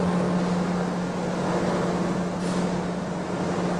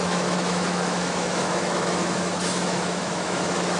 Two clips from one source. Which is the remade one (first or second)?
second